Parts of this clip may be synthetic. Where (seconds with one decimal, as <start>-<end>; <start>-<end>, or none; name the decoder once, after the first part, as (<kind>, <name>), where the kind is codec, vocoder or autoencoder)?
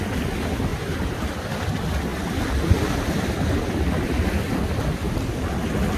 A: 0.7-1.6 (vocoder, BigVGAN v2)